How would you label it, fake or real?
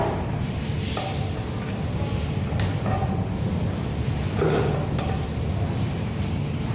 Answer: real